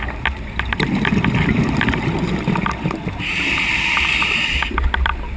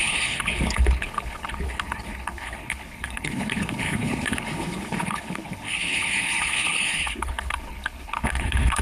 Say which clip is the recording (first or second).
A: first